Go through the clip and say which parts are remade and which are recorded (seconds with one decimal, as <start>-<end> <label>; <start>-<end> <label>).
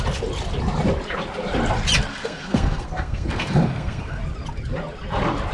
0.0-2.1 recorded; 2.1-4.2 remade; 4.2-5.5 recorded